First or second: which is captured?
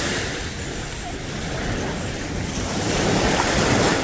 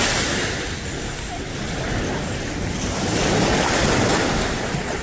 second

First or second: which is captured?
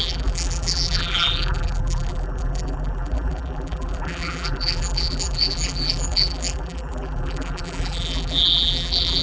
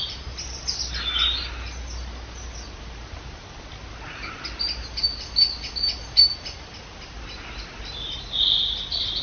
second